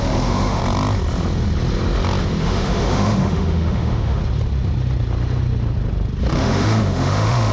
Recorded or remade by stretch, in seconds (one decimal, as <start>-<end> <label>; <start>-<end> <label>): 0.0-0.6 remade; 0.6-2.4 recorded; 2.4-4.2 remade; 4.2-6.3 recorded; 6.3-7.5 remade